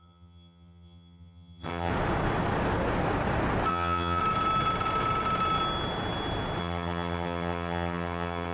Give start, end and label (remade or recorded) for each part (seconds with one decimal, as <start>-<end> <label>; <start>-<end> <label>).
0.0-1.9 remade; 1.9-3.7 recorded; 3.7-4.2 remade; 4.2-6.6 recorded; 6.6-8.5 remade